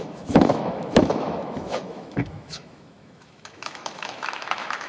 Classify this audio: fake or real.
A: fake